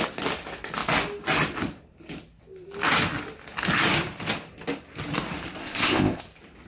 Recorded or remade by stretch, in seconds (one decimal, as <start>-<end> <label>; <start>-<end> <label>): 0.0-5.6 recorded; 5.6-6.2 remade; 6.2-6.7 recorded